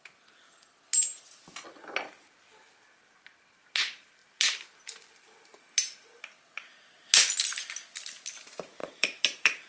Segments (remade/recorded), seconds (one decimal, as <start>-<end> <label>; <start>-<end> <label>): 0.0-8.8 recorded; 8.8-9.7 remade